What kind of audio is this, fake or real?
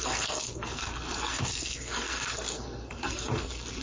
fake